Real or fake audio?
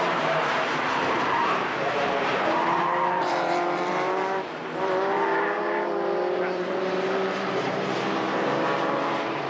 fake